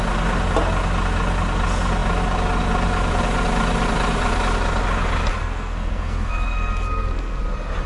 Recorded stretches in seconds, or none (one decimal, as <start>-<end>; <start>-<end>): 0.0-5.4; 7.4-7.9